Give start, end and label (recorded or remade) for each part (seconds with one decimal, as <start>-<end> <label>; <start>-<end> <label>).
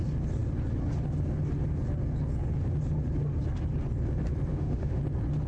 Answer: 0.0-4.5 recorded; 4.5-5.0 remade; 5.0-5.5 recorded